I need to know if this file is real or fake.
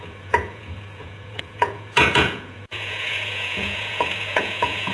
fake